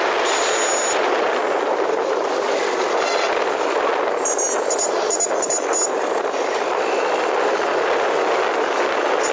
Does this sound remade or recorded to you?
recorded